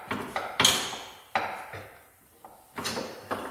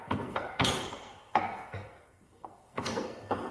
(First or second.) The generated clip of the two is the second